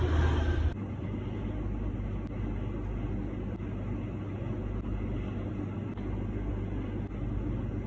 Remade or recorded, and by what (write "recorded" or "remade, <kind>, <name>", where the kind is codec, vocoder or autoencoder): recorded